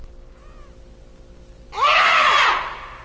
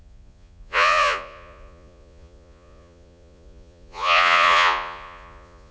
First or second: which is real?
first